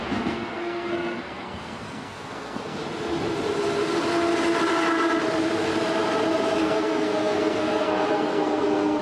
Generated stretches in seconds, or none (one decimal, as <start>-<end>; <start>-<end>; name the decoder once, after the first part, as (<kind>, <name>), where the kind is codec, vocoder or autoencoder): 0.0-2.8 (codec, SNAC); 6.6-9.0